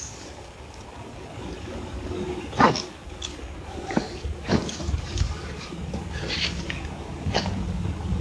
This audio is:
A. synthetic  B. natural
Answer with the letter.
A